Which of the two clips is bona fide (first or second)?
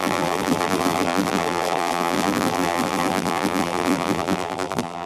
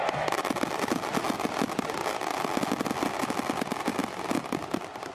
second